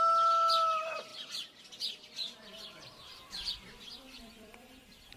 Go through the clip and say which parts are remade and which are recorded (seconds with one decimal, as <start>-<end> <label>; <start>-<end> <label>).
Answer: 0.0-1.1 recorded; 1.1-1.6 remade; 1.6-2.5 recorded; 2.5-5.2 remade